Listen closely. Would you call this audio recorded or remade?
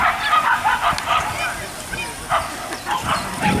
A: recorded